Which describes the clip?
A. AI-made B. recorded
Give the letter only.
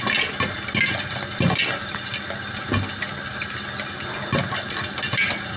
B